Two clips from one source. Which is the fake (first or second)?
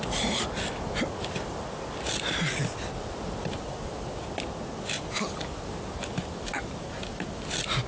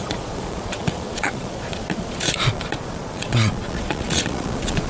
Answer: second